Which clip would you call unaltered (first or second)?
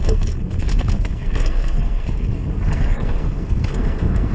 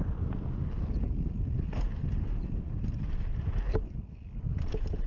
second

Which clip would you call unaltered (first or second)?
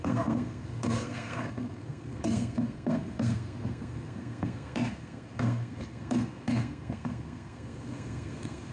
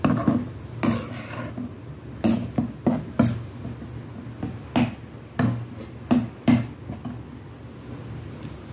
second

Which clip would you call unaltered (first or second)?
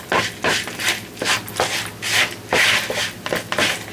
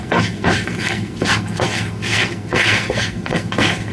first